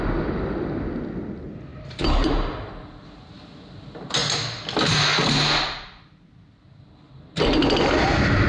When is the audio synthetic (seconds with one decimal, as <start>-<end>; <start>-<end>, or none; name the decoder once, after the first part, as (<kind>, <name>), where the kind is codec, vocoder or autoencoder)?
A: 1.7-2.6 (vocoder, BigVGAN v2)